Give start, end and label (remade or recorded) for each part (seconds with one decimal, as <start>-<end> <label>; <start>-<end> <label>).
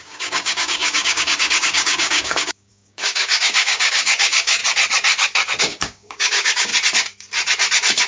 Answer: 0.0-4.6 remade; 4.6-5.6 recorded; 5.6-6.7 remade; 6.7-8.1 recorded